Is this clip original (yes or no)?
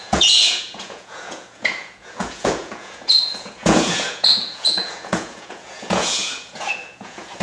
no